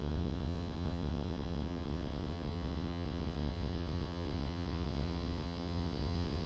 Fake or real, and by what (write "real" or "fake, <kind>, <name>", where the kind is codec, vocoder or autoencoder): fake, vocoder, WaveNeXt